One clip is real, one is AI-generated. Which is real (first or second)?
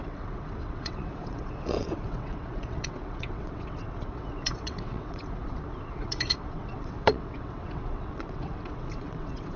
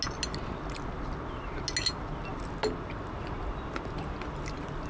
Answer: second